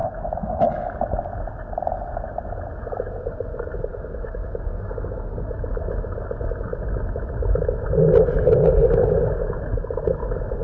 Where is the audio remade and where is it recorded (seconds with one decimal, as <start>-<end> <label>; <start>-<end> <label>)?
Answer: 0.0-0.9 remade; 0.9-3.9 recorded; 3.9-5.5 remade; 5.5-10.6 recorded